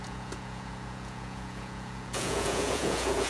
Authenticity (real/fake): fake